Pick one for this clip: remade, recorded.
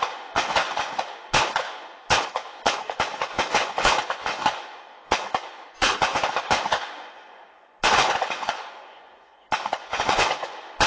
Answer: remade